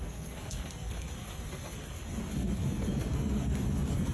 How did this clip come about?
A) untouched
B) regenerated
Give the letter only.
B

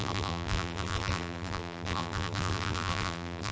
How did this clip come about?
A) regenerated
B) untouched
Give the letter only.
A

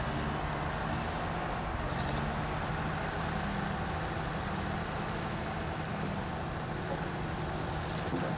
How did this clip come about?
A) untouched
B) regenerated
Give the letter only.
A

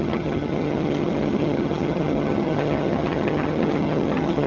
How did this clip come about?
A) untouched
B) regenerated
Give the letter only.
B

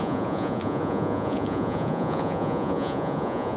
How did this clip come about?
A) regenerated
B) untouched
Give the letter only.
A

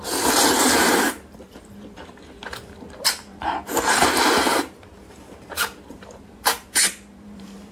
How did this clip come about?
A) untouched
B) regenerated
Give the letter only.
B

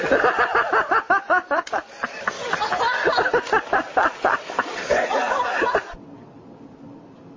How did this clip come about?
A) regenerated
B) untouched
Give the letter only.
B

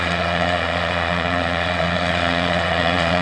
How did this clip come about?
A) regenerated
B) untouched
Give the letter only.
A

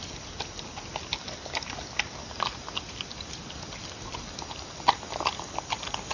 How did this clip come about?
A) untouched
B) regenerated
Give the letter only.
A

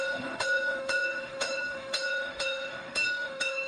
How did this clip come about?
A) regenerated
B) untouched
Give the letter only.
A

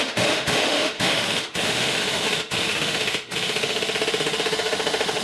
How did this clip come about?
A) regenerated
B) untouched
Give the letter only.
A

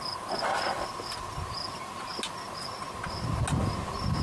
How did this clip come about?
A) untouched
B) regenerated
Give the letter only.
A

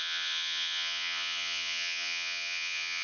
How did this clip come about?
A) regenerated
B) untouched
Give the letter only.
A